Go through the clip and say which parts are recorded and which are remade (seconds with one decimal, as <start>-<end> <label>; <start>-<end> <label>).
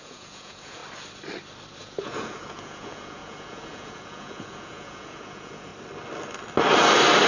0.0-0.8 remade; 0.8-1.8 recorded; 1.8-5.7 remade; 5.7-7.3 recorded